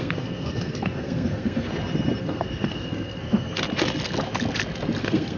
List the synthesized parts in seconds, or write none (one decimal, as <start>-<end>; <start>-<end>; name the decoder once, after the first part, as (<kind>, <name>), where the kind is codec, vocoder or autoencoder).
0.0-1.7 (codec, SNAC); 2.2-3.5; 5.0-5.4